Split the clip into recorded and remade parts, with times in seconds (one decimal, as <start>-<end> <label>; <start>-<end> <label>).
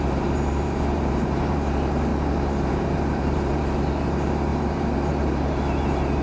0.0-2.1 remade; 2.1-2.7 recorded; 2.7-6.2 remade